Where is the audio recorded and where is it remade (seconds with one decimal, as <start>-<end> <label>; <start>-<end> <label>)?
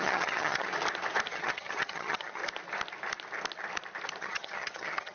0.0-0.7 remade; 0.7-1.3 recorded; 1.3-2.4 remade; 2.4-4.2 recorded; 4.2-5.1 remade